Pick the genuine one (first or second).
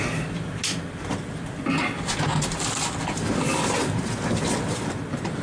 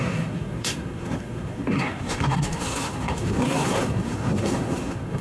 first